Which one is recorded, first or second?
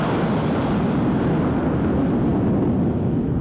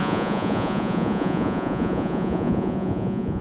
first